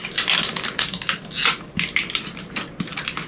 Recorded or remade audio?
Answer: recorded